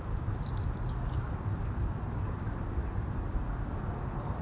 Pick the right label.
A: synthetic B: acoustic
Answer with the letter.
B